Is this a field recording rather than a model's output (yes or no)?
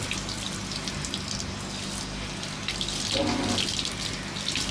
yes